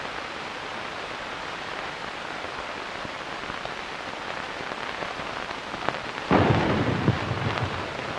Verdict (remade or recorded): remade